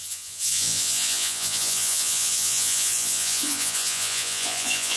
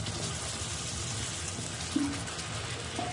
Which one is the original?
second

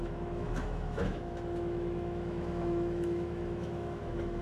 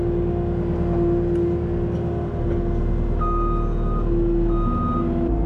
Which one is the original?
second